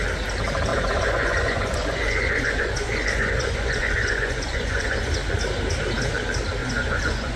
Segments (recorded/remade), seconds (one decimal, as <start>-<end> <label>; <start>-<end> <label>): 0.0-0.7 recorded; 0.7-5.1 remade; 5.1-6.6 recorded; 6.6-7.4 remade